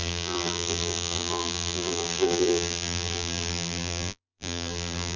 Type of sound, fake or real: fake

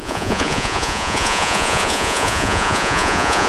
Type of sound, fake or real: fake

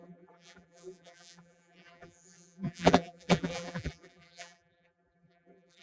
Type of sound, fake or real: fake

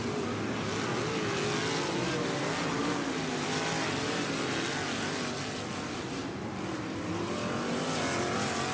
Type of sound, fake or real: real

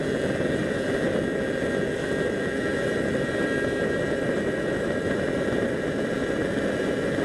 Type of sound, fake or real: real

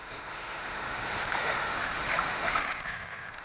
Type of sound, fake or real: fake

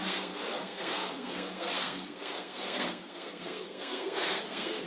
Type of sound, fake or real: fake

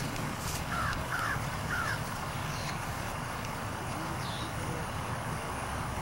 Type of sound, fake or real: fake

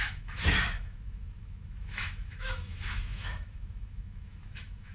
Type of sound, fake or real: fake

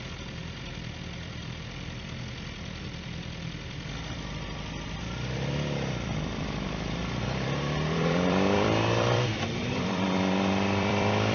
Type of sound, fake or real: fake